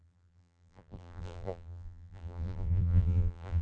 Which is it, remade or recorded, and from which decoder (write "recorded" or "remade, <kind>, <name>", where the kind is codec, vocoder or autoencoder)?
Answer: remade, vocoder, BigVGAN v2